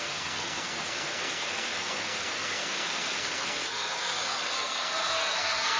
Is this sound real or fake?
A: fake